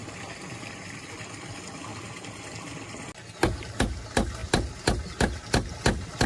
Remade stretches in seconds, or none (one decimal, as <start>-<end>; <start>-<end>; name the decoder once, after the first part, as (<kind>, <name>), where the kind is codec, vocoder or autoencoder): 0.0-1.9 (vocoder, BigVGAN v2); 3.7-6.3